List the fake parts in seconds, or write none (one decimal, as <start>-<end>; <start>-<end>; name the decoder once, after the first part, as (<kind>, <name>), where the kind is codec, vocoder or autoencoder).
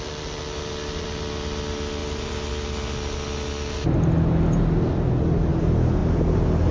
none